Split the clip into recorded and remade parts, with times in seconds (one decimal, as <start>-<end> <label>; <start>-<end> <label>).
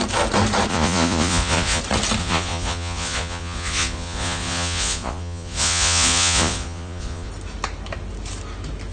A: 0.0-0.7 recorded; 0.7-1.8 remade; 1.8-2.2 recorded; 2.2-7.3 remade; 7.3-8.9 recorded